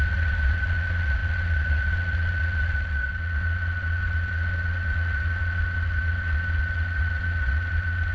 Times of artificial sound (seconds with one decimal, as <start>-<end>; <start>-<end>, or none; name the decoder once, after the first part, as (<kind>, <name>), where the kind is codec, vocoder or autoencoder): 0.0-8.1 (vocoder, Vocos)